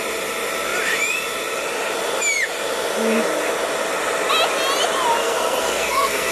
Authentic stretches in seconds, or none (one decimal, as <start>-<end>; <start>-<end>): 0.0-5.2